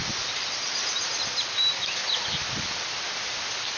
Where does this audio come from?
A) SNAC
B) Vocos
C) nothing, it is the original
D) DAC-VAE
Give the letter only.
C